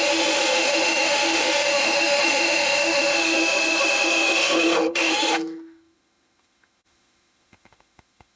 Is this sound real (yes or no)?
no